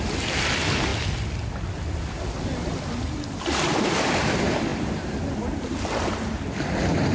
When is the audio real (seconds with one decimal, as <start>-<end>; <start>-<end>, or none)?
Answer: 0.9-4.0